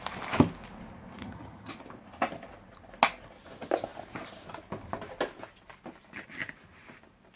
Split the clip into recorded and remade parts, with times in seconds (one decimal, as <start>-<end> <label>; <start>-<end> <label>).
0.0-1.2 recorded; 1.2-1.7 remade; 1.7-7.4 recorded